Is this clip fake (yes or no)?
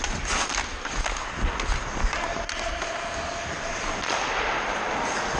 no